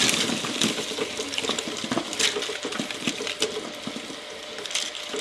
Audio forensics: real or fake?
real